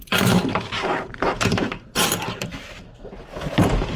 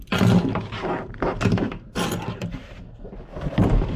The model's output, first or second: first